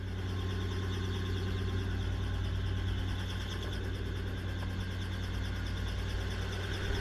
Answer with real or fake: real